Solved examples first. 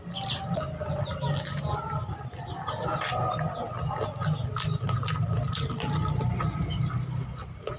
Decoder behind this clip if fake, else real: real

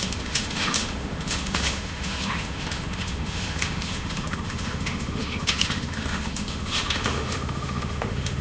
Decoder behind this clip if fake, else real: fake, autoencoder, DAC-VAE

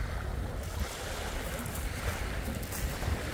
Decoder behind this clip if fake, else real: real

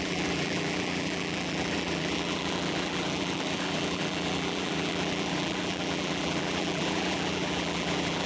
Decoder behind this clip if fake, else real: fake, vocoder, BigVGAN v2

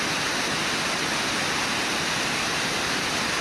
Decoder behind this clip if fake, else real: real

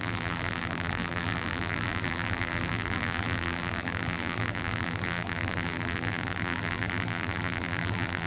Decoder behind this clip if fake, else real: fake, vocoder, BigVGAN v2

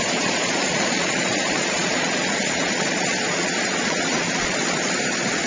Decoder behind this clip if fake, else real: fake, vocoder, Vocos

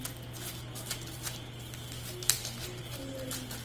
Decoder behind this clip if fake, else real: real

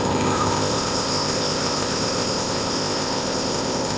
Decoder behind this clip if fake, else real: fake, codec, ZipCodec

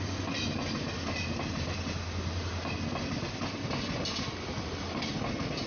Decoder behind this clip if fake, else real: real